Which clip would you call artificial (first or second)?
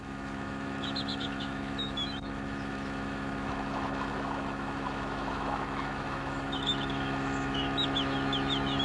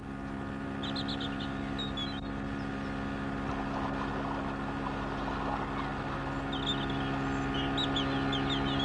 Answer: first